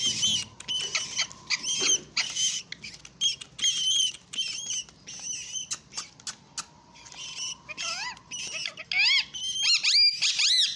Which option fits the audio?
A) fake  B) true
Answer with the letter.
B